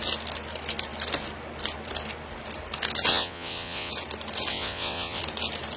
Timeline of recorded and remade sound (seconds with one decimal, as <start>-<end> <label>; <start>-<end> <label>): 0.0-3.1 recorded; 3.1-3.9 remade; 3.9-4.5 recorded; 4.5-5.2 remade; 5.2-5.8 recorded